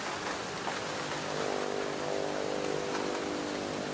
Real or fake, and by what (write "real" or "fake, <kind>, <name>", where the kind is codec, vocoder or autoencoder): real